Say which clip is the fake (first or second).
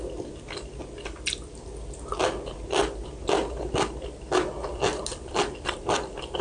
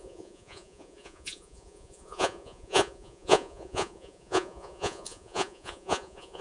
second